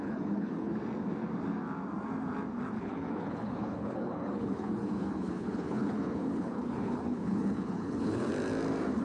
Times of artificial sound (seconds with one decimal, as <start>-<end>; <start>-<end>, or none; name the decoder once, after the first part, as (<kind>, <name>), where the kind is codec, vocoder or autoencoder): 0.0-0.7 (codec, HILCodec); 2.8-8.3